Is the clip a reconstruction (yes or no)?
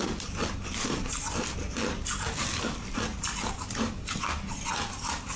no